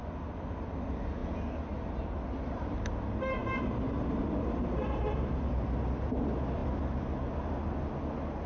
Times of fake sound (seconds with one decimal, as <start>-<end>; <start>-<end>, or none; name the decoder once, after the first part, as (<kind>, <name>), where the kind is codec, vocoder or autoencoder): 3.4-5.5 (vocoder, BigVGAN v2)

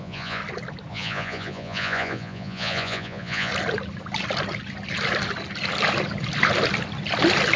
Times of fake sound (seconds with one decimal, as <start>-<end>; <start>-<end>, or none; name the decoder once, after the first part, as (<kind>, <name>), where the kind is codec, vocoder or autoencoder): 0.0-0.4 (vocoder, Vocos); 0.9-3.5